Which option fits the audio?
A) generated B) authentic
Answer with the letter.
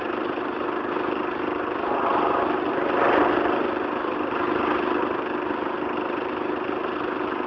A